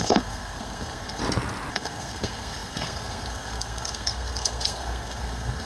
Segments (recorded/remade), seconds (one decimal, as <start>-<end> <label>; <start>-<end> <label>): 0.0-1.2 remade; 1.2-1.7 recorded; 1.7-5.7 remade